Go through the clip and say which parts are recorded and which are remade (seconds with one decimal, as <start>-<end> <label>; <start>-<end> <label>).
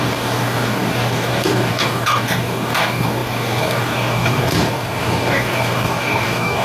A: 0.0-6.6 remade